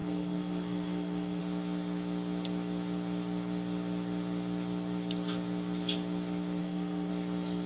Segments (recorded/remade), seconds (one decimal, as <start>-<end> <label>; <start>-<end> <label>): 0.0-1.4 remade; 1.4-6.6 recorded; 6.6-7.1 remade; 7.1-7.7 recorded